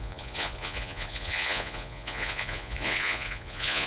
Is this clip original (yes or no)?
no